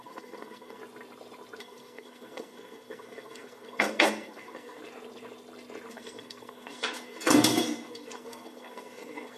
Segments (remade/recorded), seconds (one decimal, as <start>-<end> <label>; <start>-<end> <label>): 0.0-0.8 remade; 0.8-1.6 recorded; 1.6-4.8 remade; 4.8-5.9 recorded; 5.9-9.4 remade